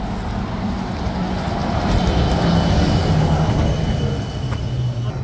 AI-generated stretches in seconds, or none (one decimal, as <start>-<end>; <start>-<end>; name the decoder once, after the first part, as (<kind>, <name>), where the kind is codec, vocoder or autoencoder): none